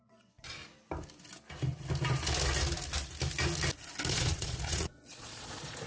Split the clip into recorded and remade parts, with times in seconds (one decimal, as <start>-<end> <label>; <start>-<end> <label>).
0.0-0.6 remade; 0.6-4.1 recorded; 4.1-5.9 remade